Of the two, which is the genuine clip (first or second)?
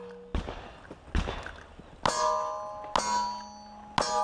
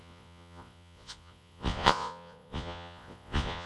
first